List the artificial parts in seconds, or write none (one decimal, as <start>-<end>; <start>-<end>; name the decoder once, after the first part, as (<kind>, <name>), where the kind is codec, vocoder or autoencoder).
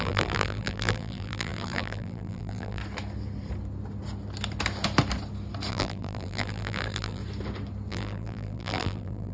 0.0-2.8 (vocoder, BigVGAN v2); 5.7-7.2; 7.9-9.3